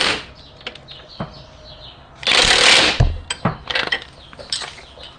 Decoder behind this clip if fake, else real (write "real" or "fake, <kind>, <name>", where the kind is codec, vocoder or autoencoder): real